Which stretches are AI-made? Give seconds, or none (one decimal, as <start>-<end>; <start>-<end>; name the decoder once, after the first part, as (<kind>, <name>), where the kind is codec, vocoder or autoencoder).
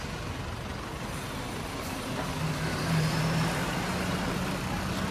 0.7-2.3 (vocoder, BigVGAN v2); 2.7-4.4